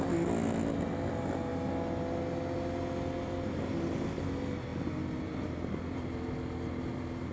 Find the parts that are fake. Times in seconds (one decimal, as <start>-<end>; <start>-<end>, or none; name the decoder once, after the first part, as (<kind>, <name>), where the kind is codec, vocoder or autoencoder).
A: none